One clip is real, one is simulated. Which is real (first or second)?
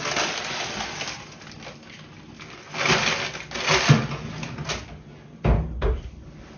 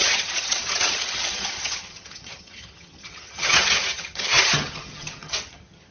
first